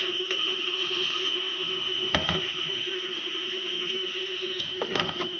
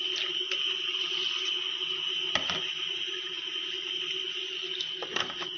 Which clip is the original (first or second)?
second